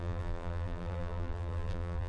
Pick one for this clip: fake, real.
fake